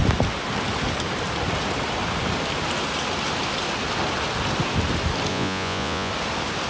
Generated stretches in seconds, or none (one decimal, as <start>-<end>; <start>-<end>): 5.3-6.1